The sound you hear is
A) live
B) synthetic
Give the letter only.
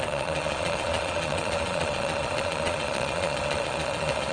B